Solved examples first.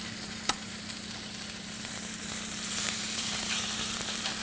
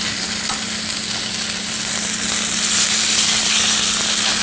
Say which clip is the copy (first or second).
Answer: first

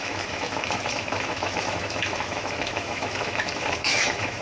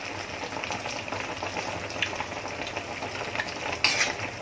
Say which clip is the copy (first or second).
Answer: first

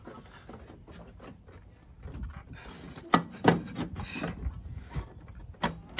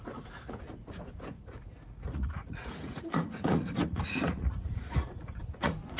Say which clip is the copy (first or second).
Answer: second